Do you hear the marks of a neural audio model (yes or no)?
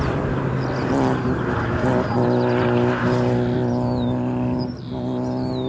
no